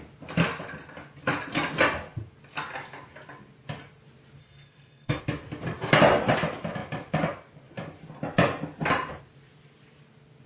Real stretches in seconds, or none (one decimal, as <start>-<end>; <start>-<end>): 0.0-4.4; 5.2-10.5